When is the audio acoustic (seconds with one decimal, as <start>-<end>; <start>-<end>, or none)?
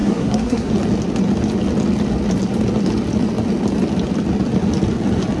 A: 0.7-5.4